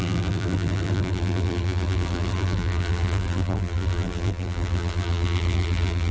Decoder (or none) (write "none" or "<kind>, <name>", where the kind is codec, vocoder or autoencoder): vocoder, BigVGAN v2